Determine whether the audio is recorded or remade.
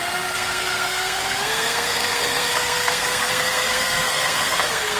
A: remade